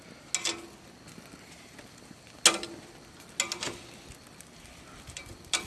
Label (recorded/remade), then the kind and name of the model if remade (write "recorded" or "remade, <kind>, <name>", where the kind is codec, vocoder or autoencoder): recorded